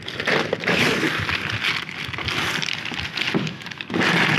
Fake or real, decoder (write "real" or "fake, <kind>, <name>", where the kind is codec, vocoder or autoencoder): real